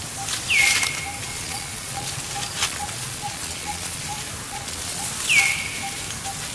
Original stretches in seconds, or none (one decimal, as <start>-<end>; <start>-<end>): 0.0-1.3; 2.1-2.6; 4.0-4.5; 5.1-6.5